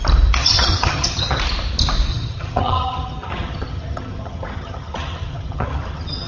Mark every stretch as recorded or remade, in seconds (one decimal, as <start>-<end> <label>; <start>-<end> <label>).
0.0-0.4 recorded; 0.4-1.4 remade; 1.4-2.1 recorded; 2.1-6.3 remade